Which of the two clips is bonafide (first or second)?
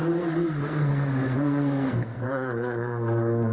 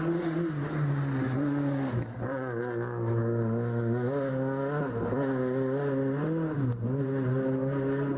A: second